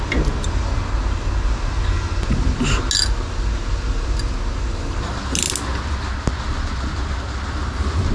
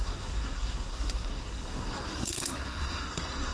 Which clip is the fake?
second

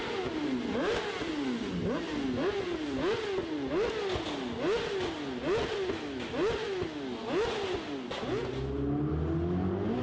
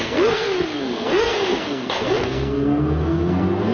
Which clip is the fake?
second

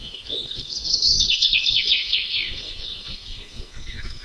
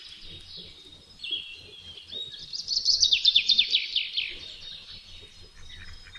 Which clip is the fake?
first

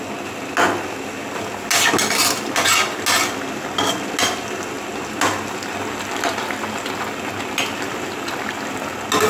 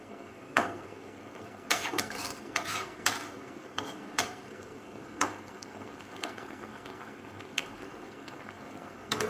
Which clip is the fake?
second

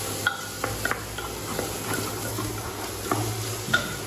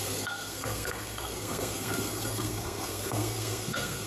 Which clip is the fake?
second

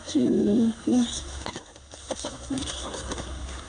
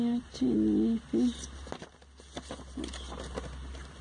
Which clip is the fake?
first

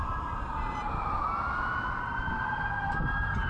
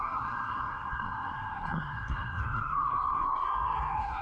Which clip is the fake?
second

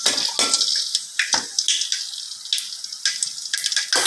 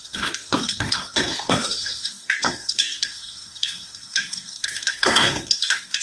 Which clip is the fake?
second